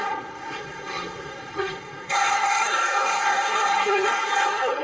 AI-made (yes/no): yes